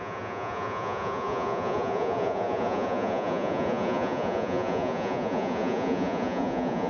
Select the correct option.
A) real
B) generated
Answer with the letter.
B